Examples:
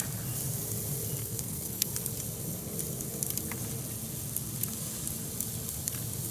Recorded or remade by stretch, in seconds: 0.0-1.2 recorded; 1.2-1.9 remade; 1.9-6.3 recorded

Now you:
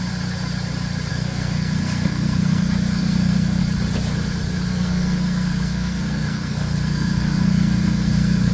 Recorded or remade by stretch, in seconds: 0.0-1.1 recorded; 1.1-3.6 remade; 3.6-4.7 recorded; 4.7-8.5 remade

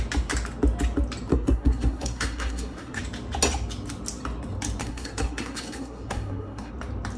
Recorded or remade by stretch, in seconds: 0.0-1.3 recorded; 1.3-3.0 remade; 3.0-4.8 recorded; 4.8-6.7 remade; 6.7-7.2 recorded

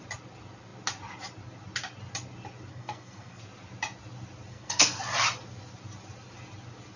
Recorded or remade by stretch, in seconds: 0.0-2.7 recorded; 2.7-3.4 remade; 3.4-4.5 recorded; 4.5-5.0 remade; 5.0-7.0 recorded

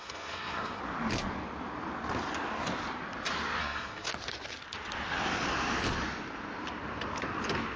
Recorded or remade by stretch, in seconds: 0.0-0.8 remade; 0.8-3.6 recorded; 3.6-4.1 remade; 4.1-7.8 recorded

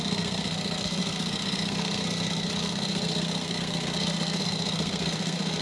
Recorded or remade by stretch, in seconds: 0.0-5.6 remade

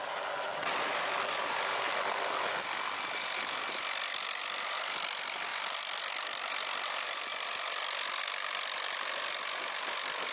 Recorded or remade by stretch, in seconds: 0.0-10.3 recorded

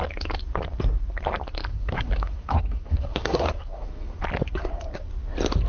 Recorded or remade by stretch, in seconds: 0.0-1.7 recorded; 1.7-4.2 remade; 4.2-5.7 recorded